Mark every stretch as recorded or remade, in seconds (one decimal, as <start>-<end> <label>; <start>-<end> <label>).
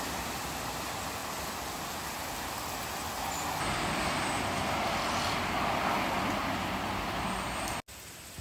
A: 0.0-8.4 recorded